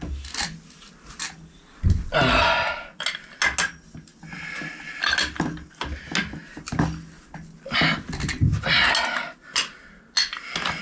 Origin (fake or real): real